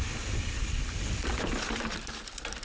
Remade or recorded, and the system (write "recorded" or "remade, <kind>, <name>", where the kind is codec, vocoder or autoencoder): recorded